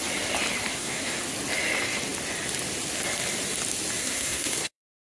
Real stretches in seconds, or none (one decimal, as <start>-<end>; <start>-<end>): 0.0-0.7; 1.2-4.0